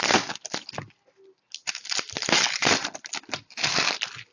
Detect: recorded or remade recorded